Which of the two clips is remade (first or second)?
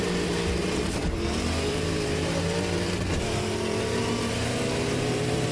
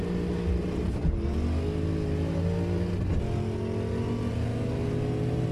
first